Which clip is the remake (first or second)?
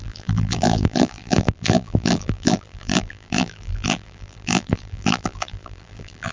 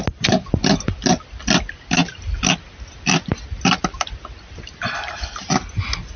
first